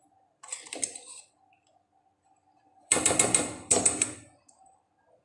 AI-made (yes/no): yes